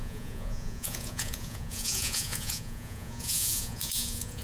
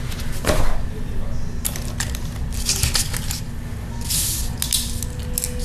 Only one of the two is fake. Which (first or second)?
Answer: first